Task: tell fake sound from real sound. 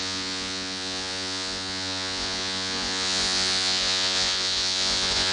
fake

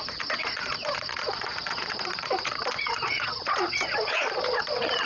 fake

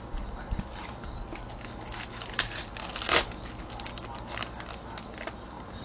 real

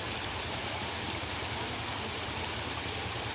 real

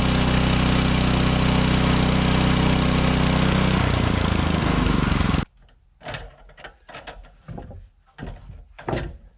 real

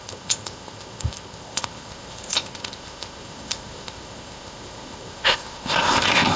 fake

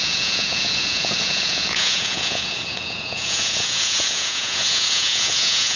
fake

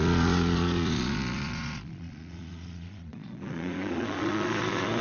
fake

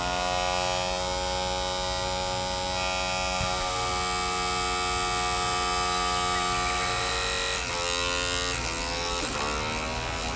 real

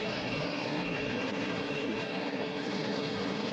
fake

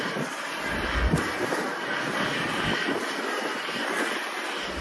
real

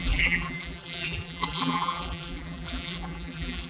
fake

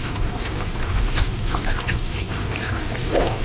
fake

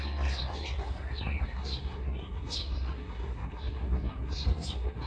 fake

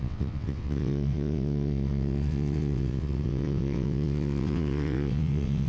fake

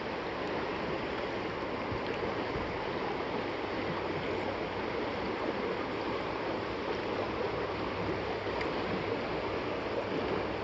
real